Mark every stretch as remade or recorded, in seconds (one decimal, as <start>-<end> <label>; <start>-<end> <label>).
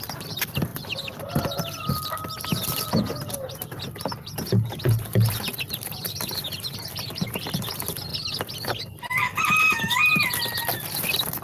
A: 0.0-8.1 remade; 8.1-10.1 recorded; 10.1-11.4 remade